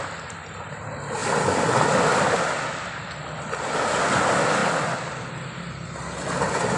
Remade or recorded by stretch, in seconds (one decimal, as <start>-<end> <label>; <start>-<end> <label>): 0.0-6.8 recorded